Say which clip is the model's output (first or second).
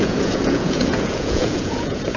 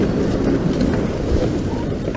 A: first